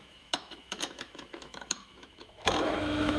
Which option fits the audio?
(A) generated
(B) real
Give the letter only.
A